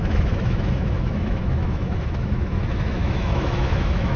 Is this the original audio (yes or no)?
no